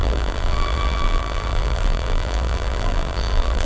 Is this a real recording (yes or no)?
no